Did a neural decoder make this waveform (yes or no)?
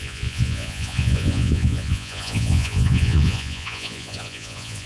yes